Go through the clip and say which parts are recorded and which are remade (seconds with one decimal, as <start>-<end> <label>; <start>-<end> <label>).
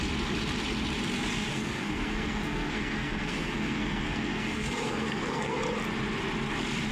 0.0-1.5 recorded; 1.5-5.6 remade; 5.6-6.9 recorded